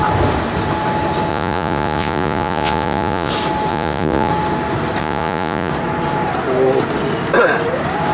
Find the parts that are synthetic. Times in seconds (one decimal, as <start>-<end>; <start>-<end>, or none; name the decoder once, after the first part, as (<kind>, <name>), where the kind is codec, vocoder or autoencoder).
1.3-3.3 (vocoder, Vocos); 3.7-4.3; 5.0-5.7